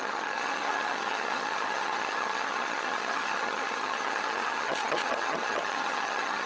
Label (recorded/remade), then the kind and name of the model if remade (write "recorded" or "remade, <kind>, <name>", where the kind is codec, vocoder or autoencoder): remade, vocoder, HiFi-GAN